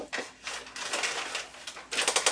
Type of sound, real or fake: real